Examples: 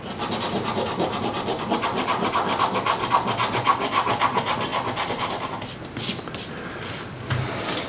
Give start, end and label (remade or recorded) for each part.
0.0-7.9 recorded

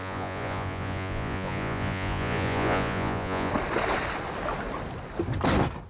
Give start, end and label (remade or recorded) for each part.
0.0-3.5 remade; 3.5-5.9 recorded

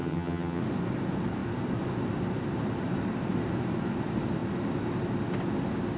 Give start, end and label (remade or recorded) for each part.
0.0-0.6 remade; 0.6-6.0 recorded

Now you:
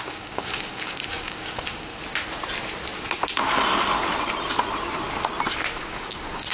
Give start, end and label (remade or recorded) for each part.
0.0-1.9 remade; 1.9-5.8 recorded; 5.8-6.5 remade

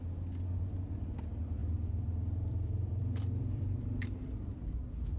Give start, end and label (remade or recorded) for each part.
0.0-1.6 recorded; 1.6-4.7 remade; 4.7-5.2 recorded